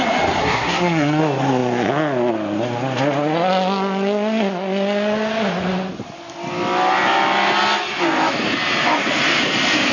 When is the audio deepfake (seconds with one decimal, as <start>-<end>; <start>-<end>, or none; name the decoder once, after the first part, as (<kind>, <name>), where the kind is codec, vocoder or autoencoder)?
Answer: 0.4-1.2 (codec, SNAC)